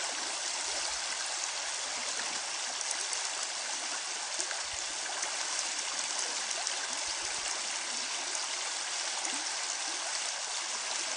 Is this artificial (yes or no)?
no